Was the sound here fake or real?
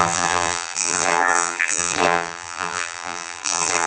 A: fake